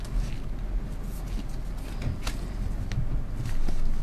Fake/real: real